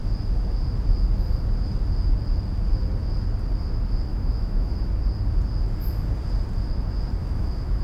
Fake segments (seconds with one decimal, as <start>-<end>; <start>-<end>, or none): 4.1-4.9; 7.2-7.8